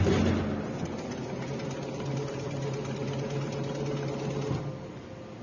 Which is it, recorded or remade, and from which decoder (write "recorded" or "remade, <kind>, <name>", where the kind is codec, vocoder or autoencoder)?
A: recorded